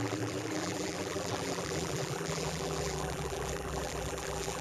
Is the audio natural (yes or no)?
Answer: no